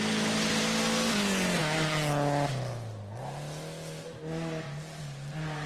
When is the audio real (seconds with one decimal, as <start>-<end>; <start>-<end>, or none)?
0.0-5.7